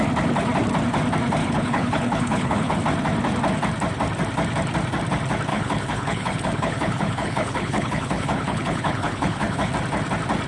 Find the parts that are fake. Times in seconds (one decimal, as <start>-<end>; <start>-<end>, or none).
1.4-2.8; 5.5-9.7